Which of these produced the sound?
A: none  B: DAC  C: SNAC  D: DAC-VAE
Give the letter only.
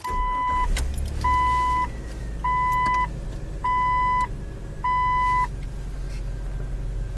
A